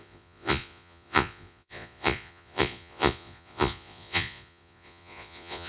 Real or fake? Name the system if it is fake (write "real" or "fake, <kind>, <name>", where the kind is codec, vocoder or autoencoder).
fake, vocoder, Vocos